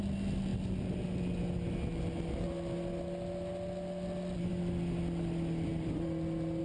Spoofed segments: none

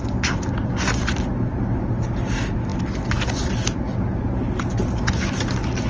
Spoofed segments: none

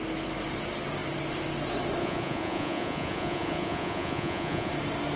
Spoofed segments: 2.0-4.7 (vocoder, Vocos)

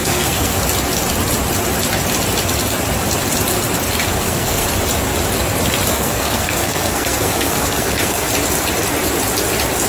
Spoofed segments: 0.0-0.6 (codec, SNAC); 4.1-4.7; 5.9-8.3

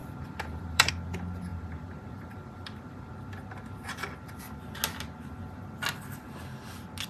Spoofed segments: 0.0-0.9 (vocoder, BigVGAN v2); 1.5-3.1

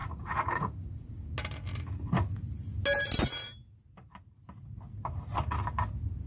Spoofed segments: 0.0-1.2 (vocoder, Vocos)

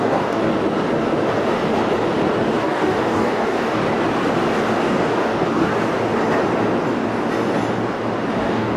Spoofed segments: 0.0-0.4 (codec, DAC); 2.6-3.8; 4.8-5.7; 8.4-8.8